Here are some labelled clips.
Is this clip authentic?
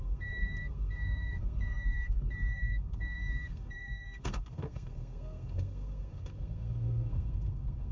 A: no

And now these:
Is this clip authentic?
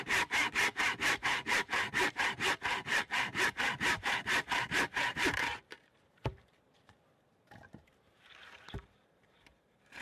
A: no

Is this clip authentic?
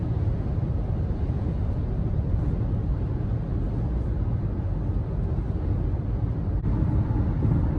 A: yes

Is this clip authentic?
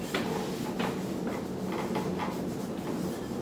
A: yes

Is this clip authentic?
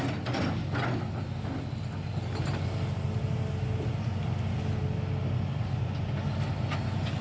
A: yes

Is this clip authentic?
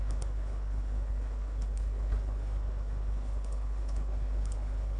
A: no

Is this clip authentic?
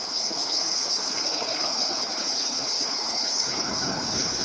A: no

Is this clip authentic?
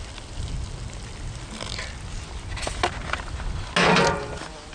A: yes